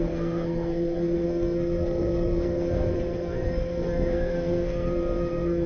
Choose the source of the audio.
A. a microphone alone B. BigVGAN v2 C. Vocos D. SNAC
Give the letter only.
D